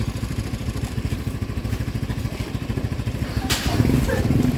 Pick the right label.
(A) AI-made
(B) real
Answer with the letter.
A